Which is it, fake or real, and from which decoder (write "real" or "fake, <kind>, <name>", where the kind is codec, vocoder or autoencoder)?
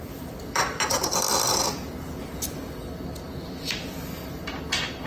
real